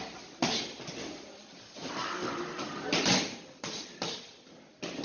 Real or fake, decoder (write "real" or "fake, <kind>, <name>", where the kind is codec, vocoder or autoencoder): real